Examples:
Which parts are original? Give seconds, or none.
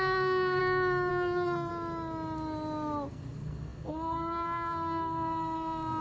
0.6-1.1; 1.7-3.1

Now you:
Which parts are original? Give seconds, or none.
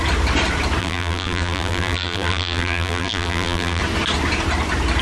0.0-0.8; 3.8-5.0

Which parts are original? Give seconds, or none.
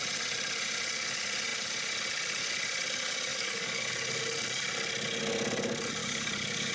0.0-3.3; 3.9-6.0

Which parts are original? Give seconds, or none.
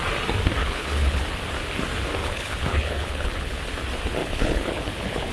0.0-0.6; 1.2-2.2; 3.6-4.2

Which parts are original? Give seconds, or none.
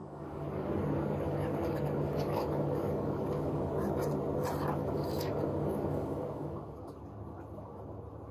3.7-4.8; 6.9-8.3